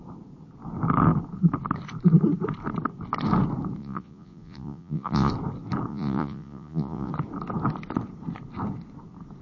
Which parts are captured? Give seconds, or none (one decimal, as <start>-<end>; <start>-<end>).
0.0-3.8; 5.3-5.9; 7.1-9.4